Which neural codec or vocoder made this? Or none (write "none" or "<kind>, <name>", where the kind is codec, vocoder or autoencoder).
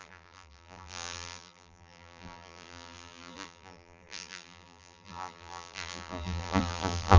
vocoder, BigVGAN v2